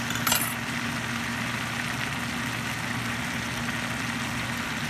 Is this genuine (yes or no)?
yes